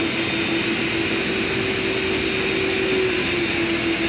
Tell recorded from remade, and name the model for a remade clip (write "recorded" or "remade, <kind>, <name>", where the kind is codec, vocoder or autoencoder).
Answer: recorded